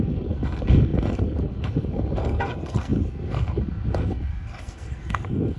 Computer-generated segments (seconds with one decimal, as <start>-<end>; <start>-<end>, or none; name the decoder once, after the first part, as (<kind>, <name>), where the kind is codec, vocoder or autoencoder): 0.0-5.6 (codec, SNAC)